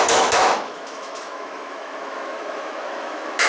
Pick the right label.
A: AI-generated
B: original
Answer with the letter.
A